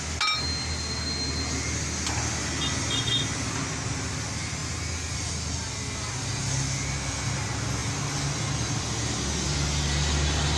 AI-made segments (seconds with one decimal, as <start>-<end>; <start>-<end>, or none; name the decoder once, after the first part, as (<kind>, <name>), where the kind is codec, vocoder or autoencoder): none